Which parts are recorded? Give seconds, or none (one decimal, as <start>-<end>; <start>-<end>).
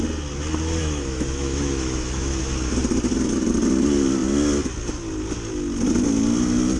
0.0-0.8; 2.4-6.8